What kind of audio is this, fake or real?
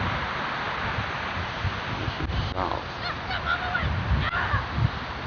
real